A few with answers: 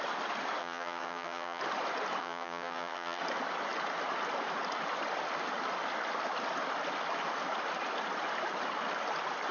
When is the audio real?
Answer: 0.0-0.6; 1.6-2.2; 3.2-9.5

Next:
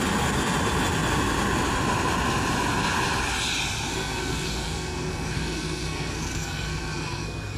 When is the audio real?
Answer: 0.0-3.9

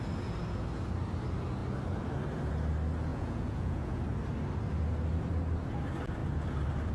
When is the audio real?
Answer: 0.0-3.1; 4.0-6.9

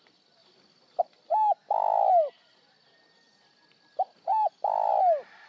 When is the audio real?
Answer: 0.0-5.5